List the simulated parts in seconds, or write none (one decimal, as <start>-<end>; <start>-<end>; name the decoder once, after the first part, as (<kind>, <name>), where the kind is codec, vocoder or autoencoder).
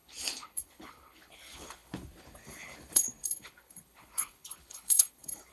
0.0-5.5 (codec, HILCodec)